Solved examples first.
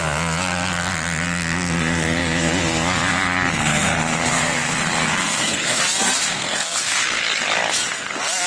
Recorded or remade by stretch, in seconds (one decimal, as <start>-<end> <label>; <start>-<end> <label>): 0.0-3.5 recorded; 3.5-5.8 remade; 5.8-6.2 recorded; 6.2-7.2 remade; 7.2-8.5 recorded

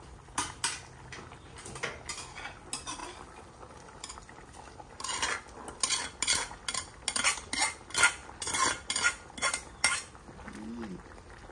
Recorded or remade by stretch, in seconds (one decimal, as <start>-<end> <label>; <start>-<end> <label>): 0.0-11.5 recorded

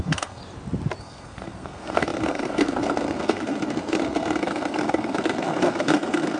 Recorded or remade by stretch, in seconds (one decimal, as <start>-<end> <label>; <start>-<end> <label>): 0.0-0.4 remade; 0.4-1.0 recorded; 1.0-6.4 remade

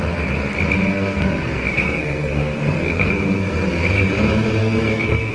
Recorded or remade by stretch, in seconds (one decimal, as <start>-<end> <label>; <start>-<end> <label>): 0.0-0.9 recorded; 0.9-4.1 remade; 4.1-4.6 recorded; 4.6-5.3 remade

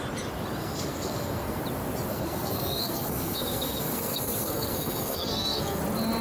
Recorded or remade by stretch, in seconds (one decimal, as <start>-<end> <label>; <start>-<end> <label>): 0.0-0.6 recorded; 0.6-1.6 remade; 1.6-2.1 recorded; 2.1-5.8 remade; 5.8-6.2 recorded